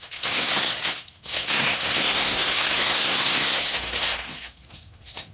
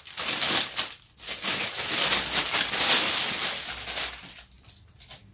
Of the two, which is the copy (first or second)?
first